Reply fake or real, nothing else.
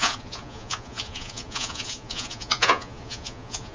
fake